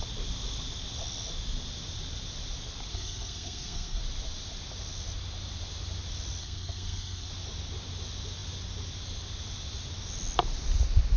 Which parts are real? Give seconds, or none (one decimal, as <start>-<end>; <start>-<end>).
0.0-2.9; 4.0-6.4; 7.3-11.2